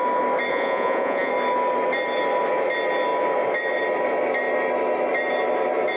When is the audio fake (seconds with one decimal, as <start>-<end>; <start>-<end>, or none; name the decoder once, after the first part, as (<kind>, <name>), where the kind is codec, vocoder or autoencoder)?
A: 0.5-1.3 (vocoder, Vocos)